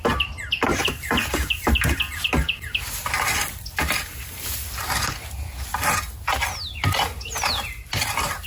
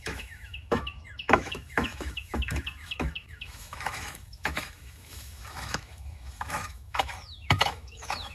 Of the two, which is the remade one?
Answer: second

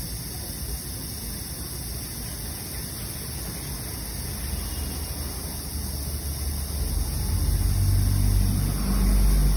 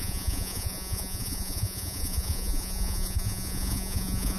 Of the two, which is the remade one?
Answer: second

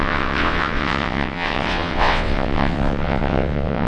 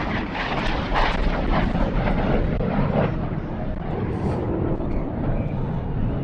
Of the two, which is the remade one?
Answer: first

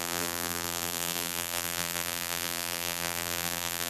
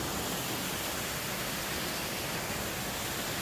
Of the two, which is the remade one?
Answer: first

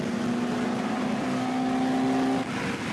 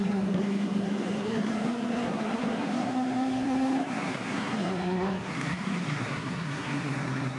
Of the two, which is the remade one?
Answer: second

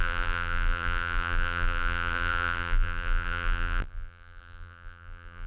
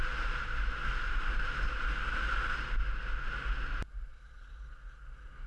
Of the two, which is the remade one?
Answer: first